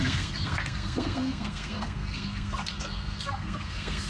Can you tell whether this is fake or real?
fake